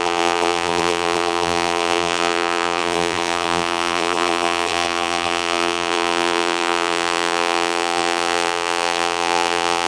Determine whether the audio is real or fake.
fake